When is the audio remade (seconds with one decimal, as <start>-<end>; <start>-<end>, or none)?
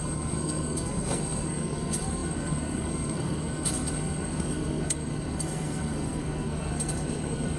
0.0-7.6